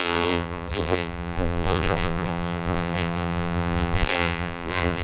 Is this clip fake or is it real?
fake